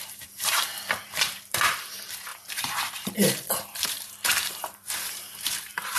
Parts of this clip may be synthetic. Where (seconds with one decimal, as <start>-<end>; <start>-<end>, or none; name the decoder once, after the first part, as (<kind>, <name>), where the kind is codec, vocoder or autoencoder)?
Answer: 0.0-0.7 (vocoder, BigVGAN v2); 1.3-6.0